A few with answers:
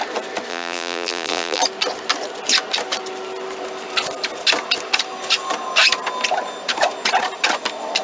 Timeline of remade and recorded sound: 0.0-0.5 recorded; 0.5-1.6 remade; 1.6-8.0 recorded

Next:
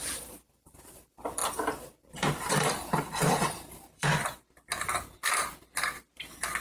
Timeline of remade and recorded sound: 0.0-4.4 remade; 4.4-6.6 recorded

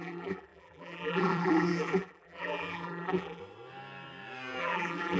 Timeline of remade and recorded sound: 0.0-3.4 remade; 3.4-4.6 recorded; 4.6-5.2 remade

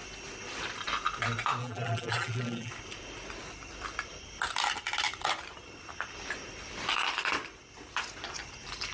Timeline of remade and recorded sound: 0.0-1.6 recorded; 1.6-2.7 remade; 2.7-8.9 recorded